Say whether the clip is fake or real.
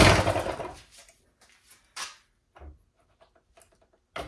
real